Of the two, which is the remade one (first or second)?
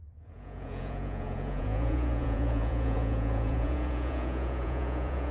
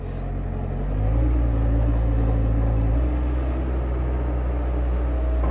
first